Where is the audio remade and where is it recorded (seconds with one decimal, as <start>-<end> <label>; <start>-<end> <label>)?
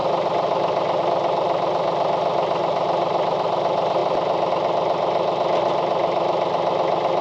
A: 0.0-7.2 recorded